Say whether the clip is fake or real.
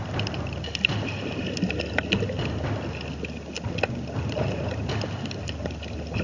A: real